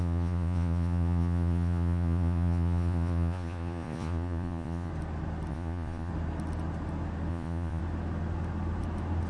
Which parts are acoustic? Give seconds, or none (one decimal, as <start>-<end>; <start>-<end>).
4.9-5.5; 6.1-7.3; 7.8-9.3